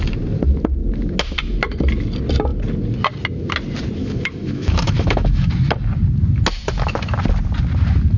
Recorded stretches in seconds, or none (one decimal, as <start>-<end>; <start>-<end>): 0.0-4.0; 5.5-8.2